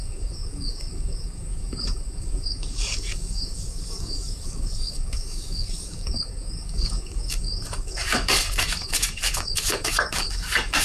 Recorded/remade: remade